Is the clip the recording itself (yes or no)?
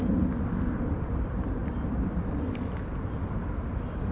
yes